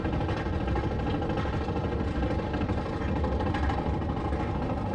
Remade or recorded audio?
recorded